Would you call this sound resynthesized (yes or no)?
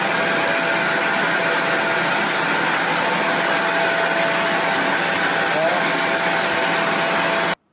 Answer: no